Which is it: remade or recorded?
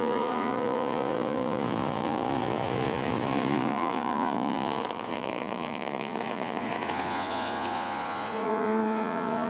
remade